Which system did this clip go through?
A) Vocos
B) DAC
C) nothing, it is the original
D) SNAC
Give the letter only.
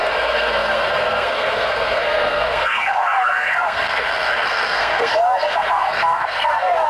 D